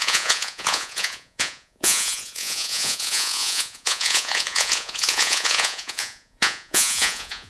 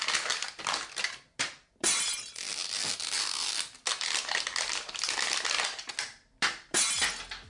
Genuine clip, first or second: second